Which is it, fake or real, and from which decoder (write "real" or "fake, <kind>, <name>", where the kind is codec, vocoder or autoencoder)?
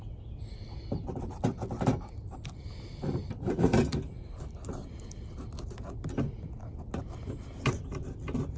real